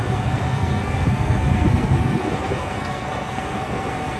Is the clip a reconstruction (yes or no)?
yes